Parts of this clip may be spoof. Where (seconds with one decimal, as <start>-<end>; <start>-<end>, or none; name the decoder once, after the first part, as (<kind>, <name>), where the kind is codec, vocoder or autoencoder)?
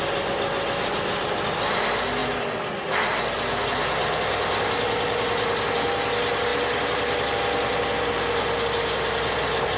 none